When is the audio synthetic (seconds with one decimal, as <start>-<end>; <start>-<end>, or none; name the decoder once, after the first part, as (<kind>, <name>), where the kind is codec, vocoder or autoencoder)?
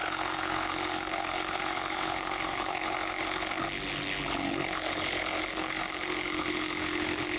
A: 0.0-7.4 (codec, HILCodec)